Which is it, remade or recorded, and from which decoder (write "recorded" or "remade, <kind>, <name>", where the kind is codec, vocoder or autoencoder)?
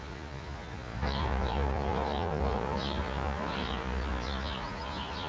remade, vocoder, Vocos